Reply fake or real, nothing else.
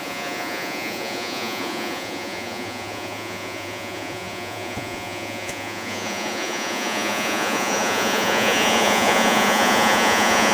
fake